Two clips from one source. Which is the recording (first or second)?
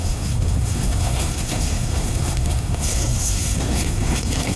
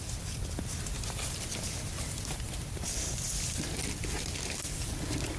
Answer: second